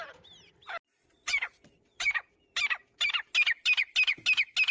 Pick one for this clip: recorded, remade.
recorded